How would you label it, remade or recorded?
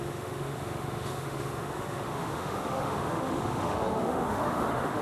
remade